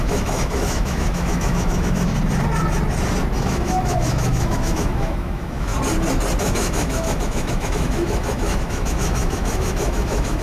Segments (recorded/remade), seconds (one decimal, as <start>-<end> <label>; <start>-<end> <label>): 0.0-2.1 remade; 2.1-3.4 recorded; 3.4-5.7 remade; 5.7-6.4 recorded; 6.4-10.4 remade